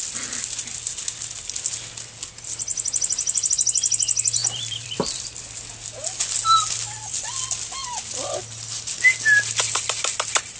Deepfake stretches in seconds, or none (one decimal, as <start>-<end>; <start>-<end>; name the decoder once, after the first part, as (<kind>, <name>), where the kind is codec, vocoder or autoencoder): 4.4-5.2 (vocoder, BigVGAN v2); 7.8-8.4